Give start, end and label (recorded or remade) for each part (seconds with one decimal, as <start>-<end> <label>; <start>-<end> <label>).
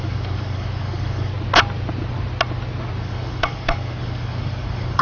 0.0-1.3 remade; 1.3-3.0 recorded; 3.0-5.0 remade